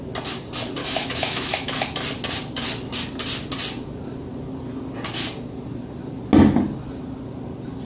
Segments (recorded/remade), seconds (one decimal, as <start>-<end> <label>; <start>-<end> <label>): 0.0-0.8 recorded; 0.8-1.8 remade; 1.8-7.8 recorded